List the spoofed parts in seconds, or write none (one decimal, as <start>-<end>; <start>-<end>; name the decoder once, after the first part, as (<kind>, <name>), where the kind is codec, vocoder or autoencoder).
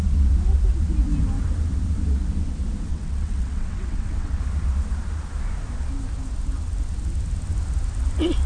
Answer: 2.9-4.4 (vocoder, WaveNeXt)